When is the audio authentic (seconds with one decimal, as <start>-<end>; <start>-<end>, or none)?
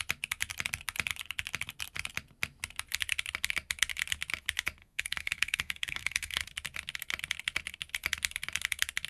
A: 0.0-4.8; 6.4-9.1